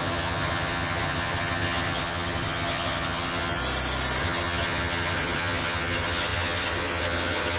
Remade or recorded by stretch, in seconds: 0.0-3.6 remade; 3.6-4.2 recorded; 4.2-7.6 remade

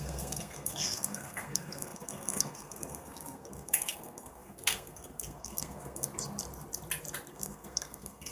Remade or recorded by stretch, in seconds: 0.0-6.1 remade; 6.1-7.3 recorded; 7.3-8.3 remade

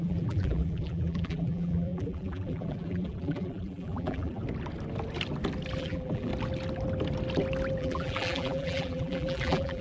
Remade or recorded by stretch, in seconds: 0.0-4.4 remade; 4.4-5.8 recorded; 5.8-6.3 remade; 6.3-7.8 recorded; 7.8-9.8 remade

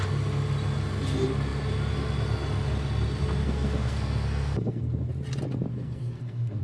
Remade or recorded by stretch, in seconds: 0.0-3.4 recorded; 3.4-5.1 remade; 5.1-5.7 recorded; 5.7-6.6 remade

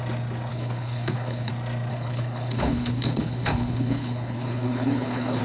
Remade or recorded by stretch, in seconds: 0.0-0.5 recorded; 0.5-1.5 remade; 1.5-1.9 recorded; 1.9-5.4 remade

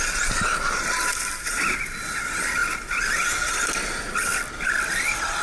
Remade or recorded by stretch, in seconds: 0.0-5.4 recorded

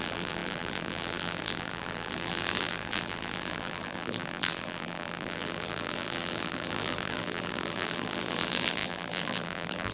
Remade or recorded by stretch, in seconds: 0.0-9.9 remade

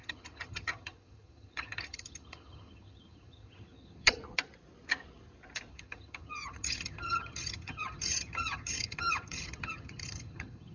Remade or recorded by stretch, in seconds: 0.0-4.2 remade; 4.2-5.7 recorded; 5.7-10.7 remade